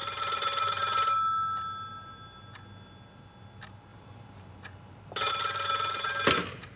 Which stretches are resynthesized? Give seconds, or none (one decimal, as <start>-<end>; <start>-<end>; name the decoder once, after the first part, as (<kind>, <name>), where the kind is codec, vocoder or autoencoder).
3.9-5.3 (vocoder, BigVGAN v2)